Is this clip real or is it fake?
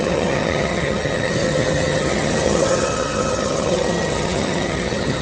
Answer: fake